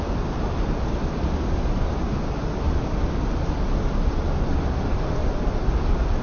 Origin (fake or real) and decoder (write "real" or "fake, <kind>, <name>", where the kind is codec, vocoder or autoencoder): real